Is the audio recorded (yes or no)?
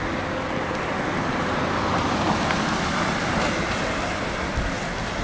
yes